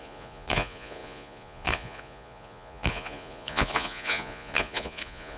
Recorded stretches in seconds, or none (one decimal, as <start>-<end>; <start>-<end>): none